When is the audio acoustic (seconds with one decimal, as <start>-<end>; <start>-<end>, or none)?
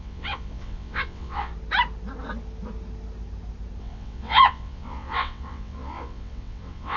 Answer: 1.5-3.8